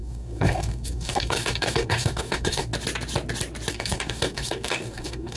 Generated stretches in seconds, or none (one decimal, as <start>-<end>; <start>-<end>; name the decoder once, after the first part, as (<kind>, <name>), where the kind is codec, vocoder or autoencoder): 0.0-2.7 (codec, DAC); 3.7-5.4